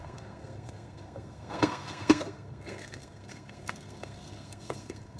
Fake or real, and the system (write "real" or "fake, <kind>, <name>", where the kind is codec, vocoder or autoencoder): fake, codec, SNAC